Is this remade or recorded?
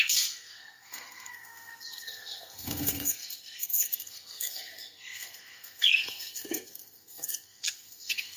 remade